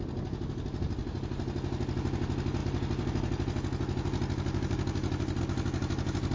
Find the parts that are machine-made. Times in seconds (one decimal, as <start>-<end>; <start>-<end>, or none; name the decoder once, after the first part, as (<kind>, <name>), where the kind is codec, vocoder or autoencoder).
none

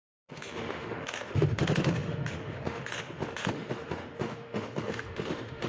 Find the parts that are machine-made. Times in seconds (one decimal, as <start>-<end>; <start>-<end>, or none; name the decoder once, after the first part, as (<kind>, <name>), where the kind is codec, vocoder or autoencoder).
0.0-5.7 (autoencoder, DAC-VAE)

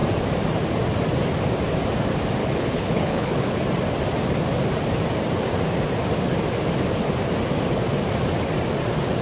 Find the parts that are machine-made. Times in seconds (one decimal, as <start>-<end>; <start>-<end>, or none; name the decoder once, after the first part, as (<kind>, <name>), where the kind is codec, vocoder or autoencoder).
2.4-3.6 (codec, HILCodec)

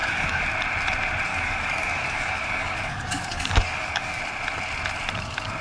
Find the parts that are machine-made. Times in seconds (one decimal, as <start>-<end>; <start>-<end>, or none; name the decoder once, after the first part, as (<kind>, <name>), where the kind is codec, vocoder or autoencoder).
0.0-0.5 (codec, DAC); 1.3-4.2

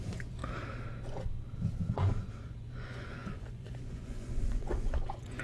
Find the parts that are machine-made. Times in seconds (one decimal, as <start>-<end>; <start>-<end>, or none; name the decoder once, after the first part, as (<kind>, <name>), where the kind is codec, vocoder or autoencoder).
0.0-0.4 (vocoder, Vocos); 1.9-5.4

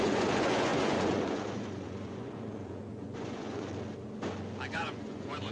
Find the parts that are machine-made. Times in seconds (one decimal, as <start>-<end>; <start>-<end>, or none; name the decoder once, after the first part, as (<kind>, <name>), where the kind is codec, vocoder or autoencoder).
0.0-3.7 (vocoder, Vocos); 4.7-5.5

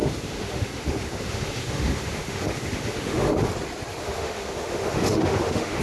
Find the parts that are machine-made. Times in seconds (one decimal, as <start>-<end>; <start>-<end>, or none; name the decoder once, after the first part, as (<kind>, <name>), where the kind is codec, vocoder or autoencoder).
0.0-3.5 (autoencoder, DAC-VAE); 4.0-5.8

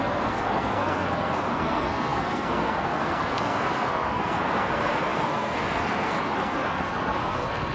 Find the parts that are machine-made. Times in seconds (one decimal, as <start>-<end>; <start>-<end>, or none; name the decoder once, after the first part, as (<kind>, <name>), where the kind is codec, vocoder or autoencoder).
0.0-7.7 (codec, SNAC)